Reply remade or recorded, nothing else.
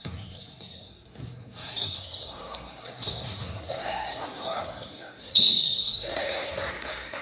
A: remade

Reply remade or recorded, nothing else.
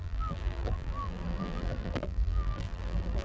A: remade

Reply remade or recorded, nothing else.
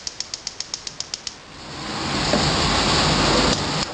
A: recorded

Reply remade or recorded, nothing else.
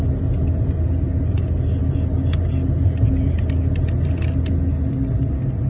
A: recorded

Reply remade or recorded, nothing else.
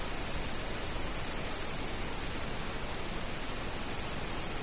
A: recorded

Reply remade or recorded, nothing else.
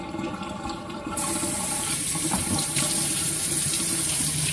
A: remade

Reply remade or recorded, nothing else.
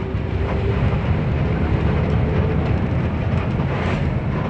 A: recorded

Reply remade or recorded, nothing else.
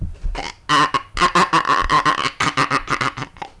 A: recorded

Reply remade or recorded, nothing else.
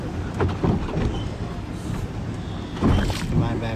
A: recorded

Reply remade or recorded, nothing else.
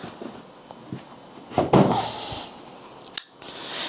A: recorded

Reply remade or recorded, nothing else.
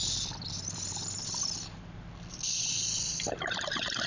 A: recorded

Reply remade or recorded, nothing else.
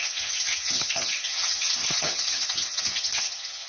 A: remade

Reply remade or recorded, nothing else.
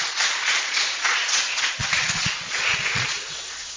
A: remade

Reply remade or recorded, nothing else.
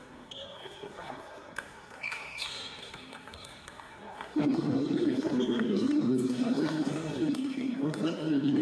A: remade